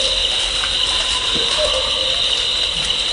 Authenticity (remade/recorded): recorded